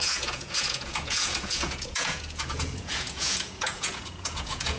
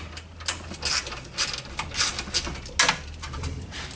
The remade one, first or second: first